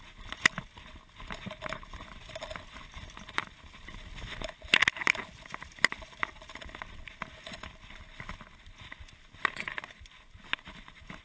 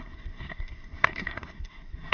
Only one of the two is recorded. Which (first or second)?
first